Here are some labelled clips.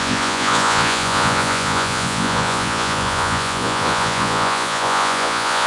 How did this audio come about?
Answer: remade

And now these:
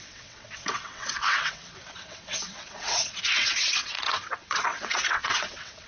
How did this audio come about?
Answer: remade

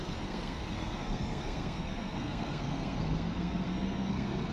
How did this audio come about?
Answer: remade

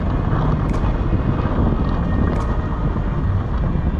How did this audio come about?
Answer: recorded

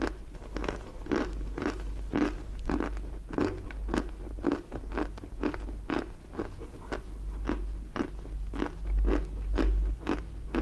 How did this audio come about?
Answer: recorded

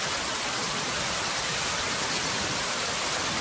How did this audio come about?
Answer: recorded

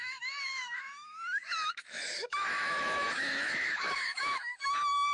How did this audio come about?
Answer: remade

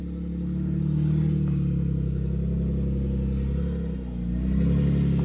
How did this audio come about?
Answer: recorded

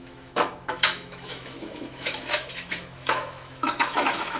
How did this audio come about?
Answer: remade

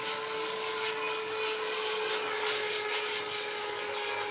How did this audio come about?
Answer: remade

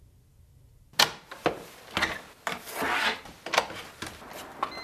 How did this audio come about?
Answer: recorded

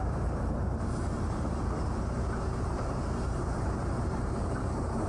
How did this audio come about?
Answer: remade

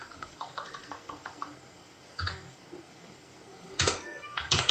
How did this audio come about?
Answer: remade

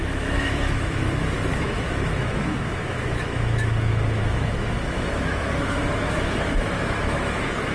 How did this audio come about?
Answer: remade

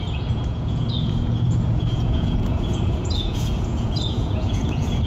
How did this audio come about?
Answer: remade